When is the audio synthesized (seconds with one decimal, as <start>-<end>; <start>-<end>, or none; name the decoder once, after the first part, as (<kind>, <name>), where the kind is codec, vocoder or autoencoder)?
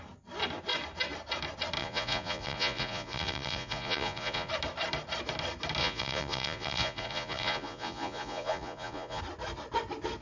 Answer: 1.8-4.5 (vocoder, Vocos); 5.8-9.2